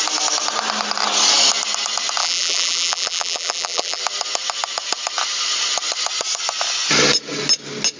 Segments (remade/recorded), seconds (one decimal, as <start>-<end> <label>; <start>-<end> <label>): 0.0-2.2 recorded; 2.2-4.0 remade; 4.0-8.0 recorded